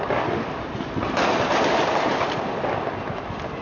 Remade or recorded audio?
recorded